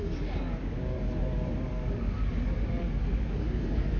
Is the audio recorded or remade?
remade